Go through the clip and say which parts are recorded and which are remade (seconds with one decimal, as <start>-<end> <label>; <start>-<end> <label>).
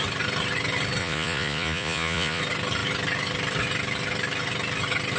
0.0-1.0 recorded; 1.0-2.4 remade; 2.4-5.2 recorded